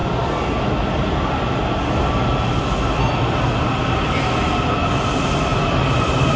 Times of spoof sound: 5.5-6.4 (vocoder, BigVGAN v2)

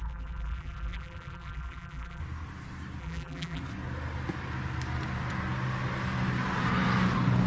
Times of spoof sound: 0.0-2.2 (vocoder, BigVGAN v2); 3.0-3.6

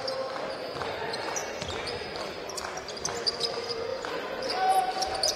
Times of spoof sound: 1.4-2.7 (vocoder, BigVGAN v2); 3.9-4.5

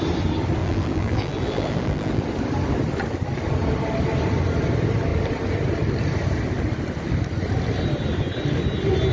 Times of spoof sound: 0.6-2.2 (vocoder, BigVGAN v2)

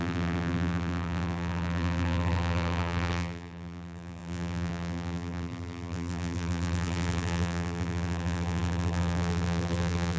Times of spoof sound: 0.0-10.2 (vocoder, BigVGAN v2)

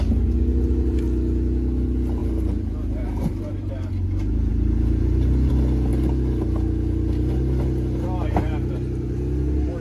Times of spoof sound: 2.2-3.9 (vocoder, BigVGAN v2); 4.5-5.5